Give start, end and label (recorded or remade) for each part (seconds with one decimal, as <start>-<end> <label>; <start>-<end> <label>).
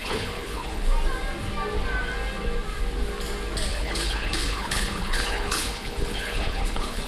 0.0-0.8 remade; 0.8-3.7 recorded; 3.7-7.1 remade